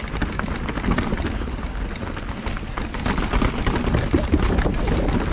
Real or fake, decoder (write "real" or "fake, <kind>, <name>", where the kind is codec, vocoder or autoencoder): real